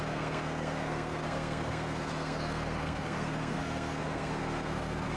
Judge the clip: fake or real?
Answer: fake